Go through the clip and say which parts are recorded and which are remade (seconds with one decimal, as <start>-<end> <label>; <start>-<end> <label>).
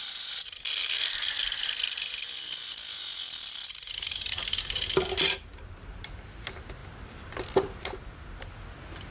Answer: 0.0-6.8 recorded; 6.8-8.4 remade; 8.4-9.1 recorded